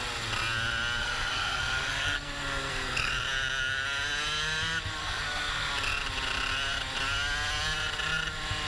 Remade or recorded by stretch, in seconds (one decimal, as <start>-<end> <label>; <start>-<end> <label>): 0.0-1.0 recorded; 1.0-3.1 remade; 3.1-5.0 recorded; 5.0-5.7 remade; 5.7-8.7 recorded